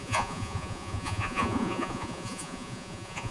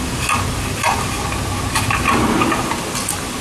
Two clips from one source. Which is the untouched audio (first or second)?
second